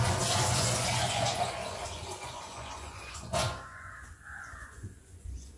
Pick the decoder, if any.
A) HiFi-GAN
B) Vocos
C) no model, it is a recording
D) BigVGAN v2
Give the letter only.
B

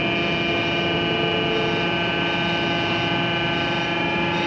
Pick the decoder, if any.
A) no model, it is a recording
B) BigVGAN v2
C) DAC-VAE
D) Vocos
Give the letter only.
A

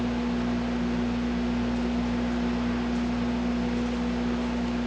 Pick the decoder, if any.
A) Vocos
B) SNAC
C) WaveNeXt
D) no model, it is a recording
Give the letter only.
D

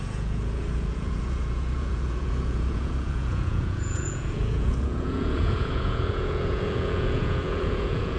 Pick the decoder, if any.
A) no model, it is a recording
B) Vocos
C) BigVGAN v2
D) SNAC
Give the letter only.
B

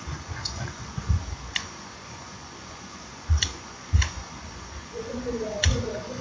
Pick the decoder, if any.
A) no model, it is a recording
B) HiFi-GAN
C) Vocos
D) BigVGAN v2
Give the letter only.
C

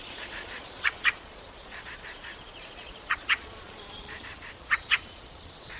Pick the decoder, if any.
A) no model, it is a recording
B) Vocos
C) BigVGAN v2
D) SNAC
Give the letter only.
B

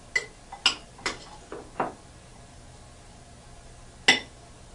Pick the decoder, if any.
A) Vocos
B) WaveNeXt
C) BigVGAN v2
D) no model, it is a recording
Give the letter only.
D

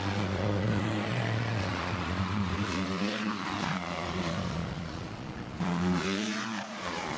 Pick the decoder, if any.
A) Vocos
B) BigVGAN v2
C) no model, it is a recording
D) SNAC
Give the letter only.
A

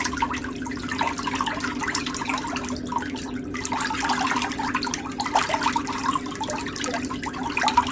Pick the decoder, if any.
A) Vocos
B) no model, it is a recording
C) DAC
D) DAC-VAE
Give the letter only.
B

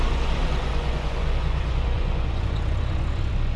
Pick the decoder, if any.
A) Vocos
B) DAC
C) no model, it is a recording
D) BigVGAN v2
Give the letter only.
A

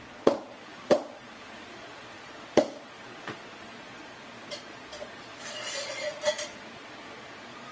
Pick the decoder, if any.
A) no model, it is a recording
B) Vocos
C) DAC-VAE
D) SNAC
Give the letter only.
B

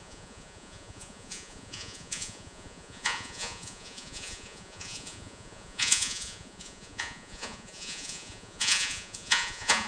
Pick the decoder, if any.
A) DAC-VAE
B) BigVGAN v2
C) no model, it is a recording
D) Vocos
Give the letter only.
D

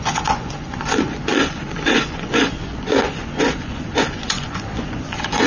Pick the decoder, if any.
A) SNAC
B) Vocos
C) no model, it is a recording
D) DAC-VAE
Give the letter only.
B